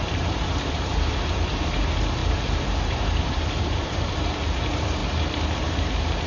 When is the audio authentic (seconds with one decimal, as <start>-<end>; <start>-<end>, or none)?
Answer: 5.0-5.6